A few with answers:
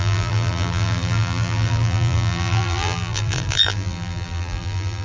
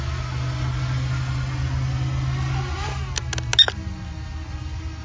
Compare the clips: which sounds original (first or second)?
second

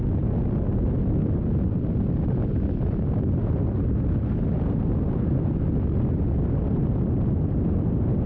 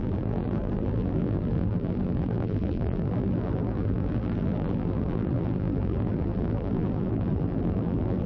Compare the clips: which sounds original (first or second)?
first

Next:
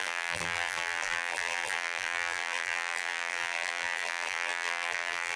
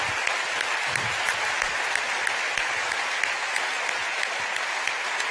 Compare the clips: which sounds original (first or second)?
second